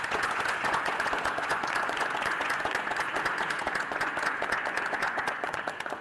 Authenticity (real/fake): fake